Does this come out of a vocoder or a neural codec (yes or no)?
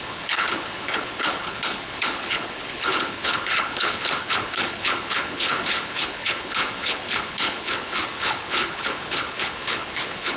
yes